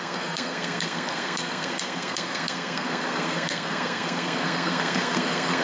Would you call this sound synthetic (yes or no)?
yes